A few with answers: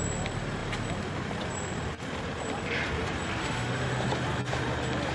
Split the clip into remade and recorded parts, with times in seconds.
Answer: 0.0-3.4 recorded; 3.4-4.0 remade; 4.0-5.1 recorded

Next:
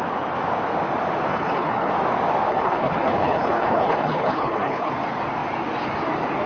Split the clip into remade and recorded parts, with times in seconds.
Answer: 0.0-1.3 recorded; 1.3-1.9 remade; 1.9-2.5 recorded; 2.5-4.9 remade; 4.9-6.5 recorded

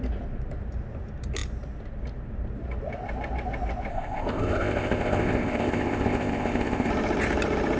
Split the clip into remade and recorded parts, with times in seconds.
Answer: 0.0-3.9 recorded; 3.9-6.9 remade; 6.9-7.8 recorded

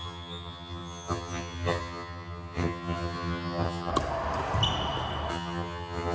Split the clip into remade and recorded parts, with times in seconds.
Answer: 0.0-3.9 remade; 3.9-5.3 recorded; 5.3-6.1 remade

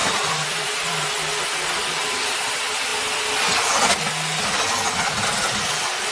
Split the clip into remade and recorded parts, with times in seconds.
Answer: 0.0-1.1 remade; 1.1-6.1 recorded

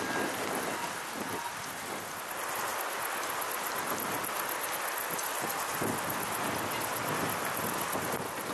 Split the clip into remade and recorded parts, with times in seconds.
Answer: 0.0-8.5 recorded

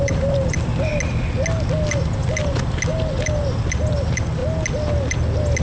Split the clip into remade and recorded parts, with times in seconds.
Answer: 0.0-0.9 remade; 0.9-2.9 recorded; 2.9-4.4 remade; 4.4-5.6 recorded